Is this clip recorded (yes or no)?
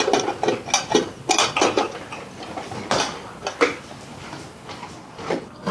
yes